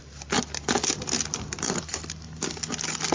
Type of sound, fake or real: real